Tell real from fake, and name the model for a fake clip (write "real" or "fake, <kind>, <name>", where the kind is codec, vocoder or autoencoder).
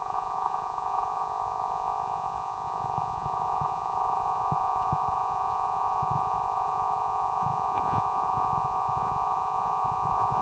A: fake, vocoder, Vocos